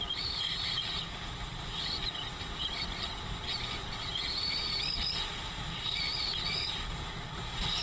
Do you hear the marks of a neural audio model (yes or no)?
no